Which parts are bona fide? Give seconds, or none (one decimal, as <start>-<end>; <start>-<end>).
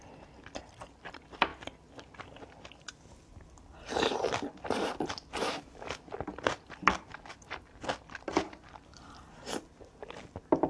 0.0-5.4; 6.0-10.7